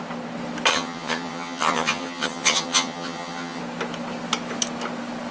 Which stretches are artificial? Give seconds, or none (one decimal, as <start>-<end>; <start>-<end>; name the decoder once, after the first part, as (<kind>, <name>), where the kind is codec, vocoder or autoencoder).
0.7-3.6 (vocoder, HiFi-GAN)